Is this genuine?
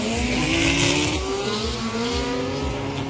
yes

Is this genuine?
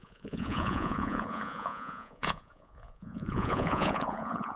no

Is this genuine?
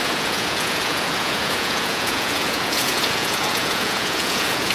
no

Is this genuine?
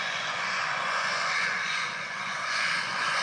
no